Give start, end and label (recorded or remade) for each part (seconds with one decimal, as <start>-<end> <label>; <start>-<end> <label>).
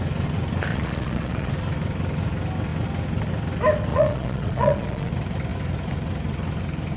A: 0.0-0.7 recorded; 0.7-1.5 remade; 1.5-3.9 recorded; 3.9-5.1 remade; 5.1-7.0 recorded